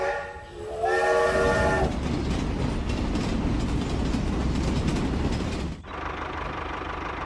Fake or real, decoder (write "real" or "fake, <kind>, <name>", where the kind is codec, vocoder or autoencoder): real